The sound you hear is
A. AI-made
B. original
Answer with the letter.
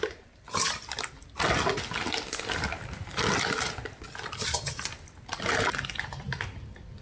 B